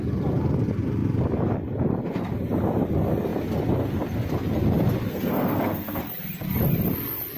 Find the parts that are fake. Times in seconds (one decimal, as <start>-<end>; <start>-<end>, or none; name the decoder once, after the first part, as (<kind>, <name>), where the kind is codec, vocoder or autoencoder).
5.1-6.0 (codec, SNAC)